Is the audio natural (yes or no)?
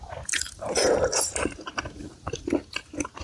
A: yes